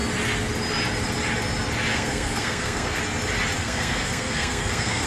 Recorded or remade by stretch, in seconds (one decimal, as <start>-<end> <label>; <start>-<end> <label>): 0.0-1.9 recorded; 1.9-3.0 remade; 3.0-3.6 recorded; 3.6-5.1 remade